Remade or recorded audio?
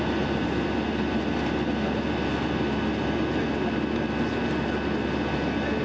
recorded